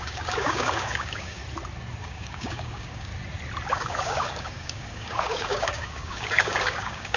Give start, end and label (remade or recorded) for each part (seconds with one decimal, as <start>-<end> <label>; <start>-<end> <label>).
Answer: 0.0-1.4 remade; 1.4-2.0 recorded; 2.0-3.1 remade; 3.1-3.7 recorded; 3.7-7.2 remade